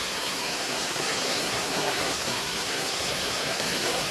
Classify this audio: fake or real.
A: fake